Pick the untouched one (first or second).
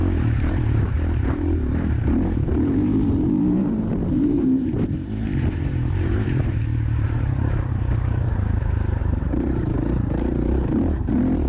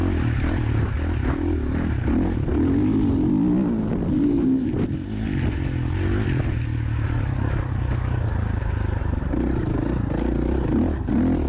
second